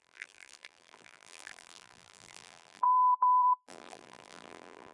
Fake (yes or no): yes